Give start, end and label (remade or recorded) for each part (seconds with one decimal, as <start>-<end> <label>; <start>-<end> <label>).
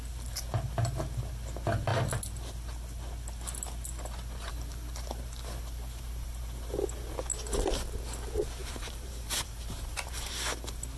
0.0-8.6 recorded; 8.6-10.3 remade; 10.3-11.0 recorded